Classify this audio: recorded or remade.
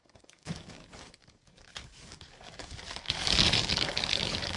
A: remade